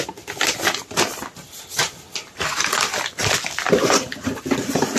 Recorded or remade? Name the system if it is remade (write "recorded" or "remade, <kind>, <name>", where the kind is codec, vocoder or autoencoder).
recorded